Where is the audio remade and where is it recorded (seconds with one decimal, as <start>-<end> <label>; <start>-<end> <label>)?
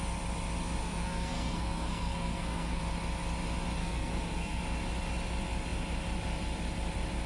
0.0-0.8 recorded; 0.8-2.8 remade; 2.8-3.8 recorded; 3.8-4.6 remade; 4.6-7.3 recorded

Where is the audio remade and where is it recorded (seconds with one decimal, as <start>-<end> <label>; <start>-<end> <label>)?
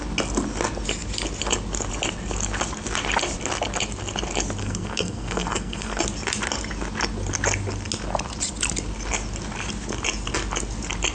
0.0-4.6 recorded; 4.6-6.0 remade; 6.0-11.1 recorded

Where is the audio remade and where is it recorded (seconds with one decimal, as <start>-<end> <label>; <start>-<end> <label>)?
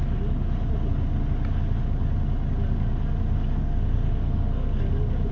0.0-3.6 recorded; 3.6-4.8 remade; 4.8-5.3 recorded